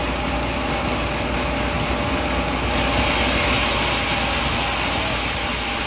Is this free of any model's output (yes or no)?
yes